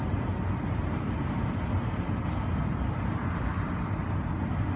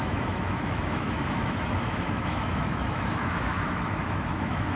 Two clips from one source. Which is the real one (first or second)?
first